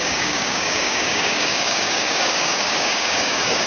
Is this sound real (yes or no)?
no